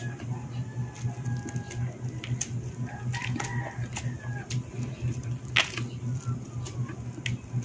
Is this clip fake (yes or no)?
no